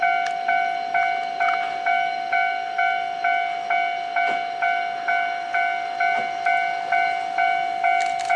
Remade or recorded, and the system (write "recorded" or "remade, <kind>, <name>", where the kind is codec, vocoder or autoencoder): recorded